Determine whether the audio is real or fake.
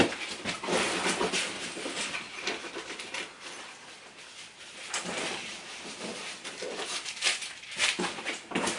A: real